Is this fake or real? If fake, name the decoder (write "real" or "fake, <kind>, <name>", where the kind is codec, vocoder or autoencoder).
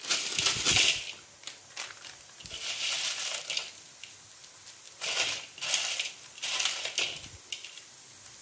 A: real